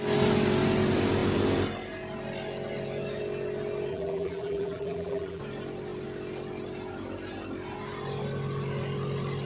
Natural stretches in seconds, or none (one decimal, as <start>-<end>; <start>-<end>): 0.0-3.9; 5.4-9.4